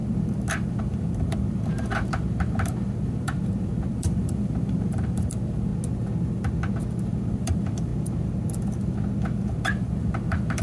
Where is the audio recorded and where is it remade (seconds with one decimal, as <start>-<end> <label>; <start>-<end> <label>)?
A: 0.0-5.7 remade; 5.7-7.3 recorded; 7.3-7.9 remade; 7.9-9.6 recorded; 9.6-10.6 remade

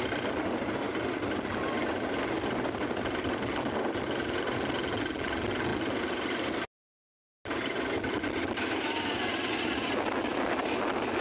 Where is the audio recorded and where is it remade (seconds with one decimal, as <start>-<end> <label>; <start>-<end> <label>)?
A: 0.0-11.2 recorded

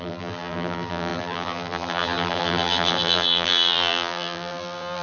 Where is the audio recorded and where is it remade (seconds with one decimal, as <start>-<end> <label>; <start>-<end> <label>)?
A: 0.0-5.0 remade

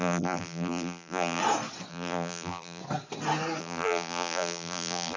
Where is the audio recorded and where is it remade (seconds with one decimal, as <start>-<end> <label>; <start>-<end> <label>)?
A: 0.0-1.4 remade; 1.4-1.9 recorded; 1.9-2.8 remade; 2.8-3.6 recorded; 3.6-5.2 remade

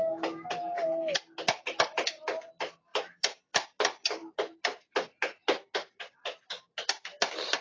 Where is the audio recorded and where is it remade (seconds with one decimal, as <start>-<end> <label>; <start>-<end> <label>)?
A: 0.0-2.9 recorded; 2.9-3.8 remade; 3.8-7.6 recorded

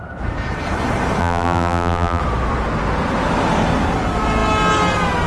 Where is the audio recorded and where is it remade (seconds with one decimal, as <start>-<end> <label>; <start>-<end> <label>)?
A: 0.0-1.2 recorded; 1.2-2.2 remade; 2.2-5.3 recorded

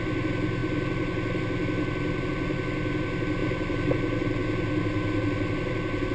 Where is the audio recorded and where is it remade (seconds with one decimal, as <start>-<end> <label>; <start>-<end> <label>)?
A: 0.0-3.4 recorded; 3.4-3.9 remade; 3.9-6.1 recorded

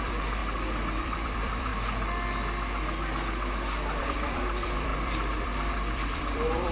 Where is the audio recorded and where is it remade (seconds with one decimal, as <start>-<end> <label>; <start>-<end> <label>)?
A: 0.0-0.4 remade; 0.4-1.0 recorded; 1.0-1.7 remade; 1.7-4.0 recorded; 4.0-6.7 remade